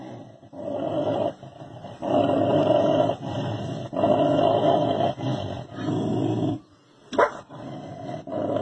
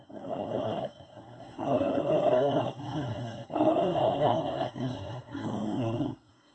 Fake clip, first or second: second